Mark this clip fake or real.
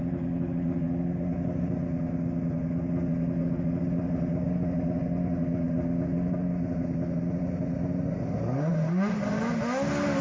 real